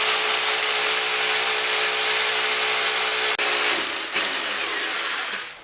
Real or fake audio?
real